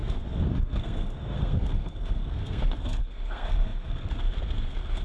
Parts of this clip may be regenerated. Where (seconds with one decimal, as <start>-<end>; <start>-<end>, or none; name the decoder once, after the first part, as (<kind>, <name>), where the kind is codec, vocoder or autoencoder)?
0.0-5.0 (codec, SNAC)